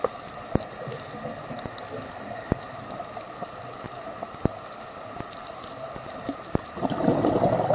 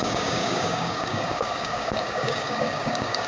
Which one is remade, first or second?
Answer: second